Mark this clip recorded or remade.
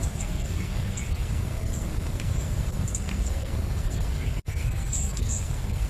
remade